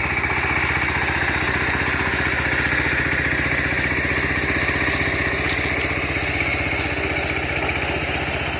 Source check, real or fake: real